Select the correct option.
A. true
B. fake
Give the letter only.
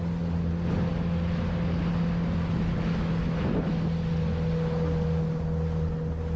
A